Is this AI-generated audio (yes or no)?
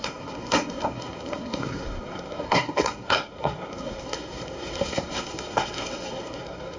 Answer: yes